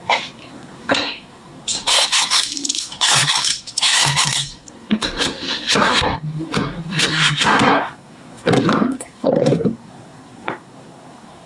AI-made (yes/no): yes